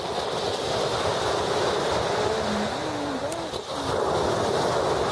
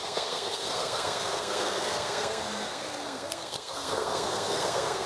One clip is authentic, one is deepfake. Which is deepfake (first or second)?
second